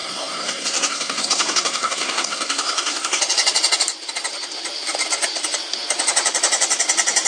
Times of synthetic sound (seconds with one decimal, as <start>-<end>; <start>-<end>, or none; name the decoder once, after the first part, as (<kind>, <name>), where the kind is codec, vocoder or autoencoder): 0.0-3.2 (codec, SNAC)